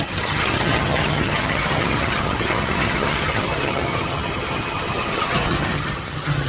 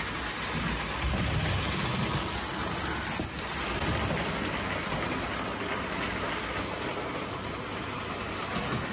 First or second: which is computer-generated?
first